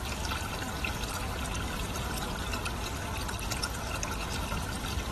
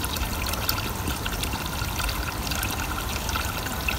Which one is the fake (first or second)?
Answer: second